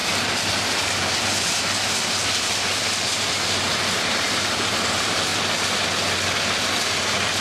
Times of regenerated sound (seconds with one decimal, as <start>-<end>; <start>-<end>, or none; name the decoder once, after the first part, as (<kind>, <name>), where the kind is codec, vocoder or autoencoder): 0.0-5.3 (vocoder, BigVGAN v2); 6.8-7.4